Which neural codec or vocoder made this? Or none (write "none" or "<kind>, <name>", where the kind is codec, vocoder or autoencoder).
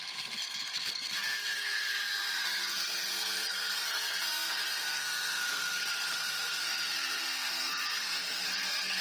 codec, SNAC